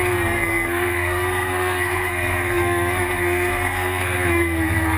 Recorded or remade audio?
remade